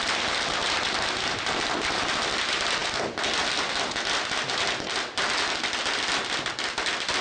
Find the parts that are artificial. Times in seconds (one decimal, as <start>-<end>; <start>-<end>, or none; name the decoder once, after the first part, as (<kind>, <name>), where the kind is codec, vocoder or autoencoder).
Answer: none